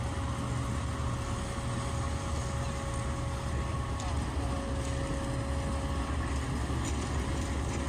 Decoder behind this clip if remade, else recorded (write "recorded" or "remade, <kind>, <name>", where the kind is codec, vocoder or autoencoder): recorded